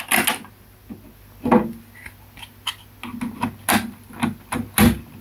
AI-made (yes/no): no